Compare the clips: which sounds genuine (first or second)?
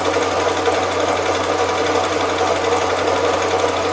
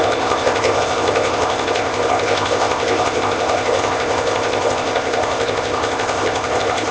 first